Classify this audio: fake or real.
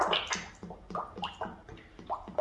real